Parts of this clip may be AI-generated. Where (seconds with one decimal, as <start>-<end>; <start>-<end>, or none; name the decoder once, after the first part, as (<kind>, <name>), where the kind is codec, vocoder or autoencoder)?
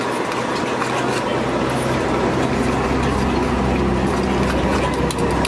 none